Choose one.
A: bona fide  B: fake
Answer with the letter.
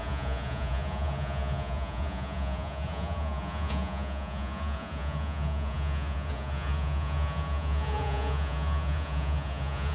B